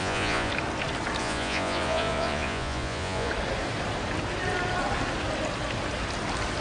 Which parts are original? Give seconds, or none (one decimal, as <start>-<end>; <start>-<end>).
0.5-1.2; 3.3-6.6